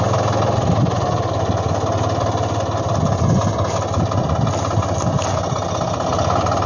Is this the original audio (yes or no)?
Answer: yes